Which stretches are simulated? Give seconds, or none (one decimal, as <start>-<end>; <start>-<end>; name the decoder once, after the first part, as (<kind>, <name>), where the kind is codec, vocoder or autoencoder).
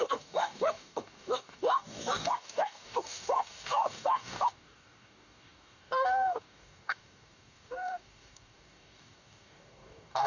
0.0-10.3 (codec, DAC)